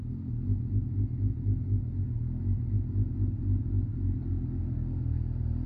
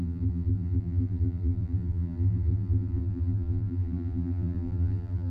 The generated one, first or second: second